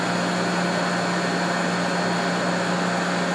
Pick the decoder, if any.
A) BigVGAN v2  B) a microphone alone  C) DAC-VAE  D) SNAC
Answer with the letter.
B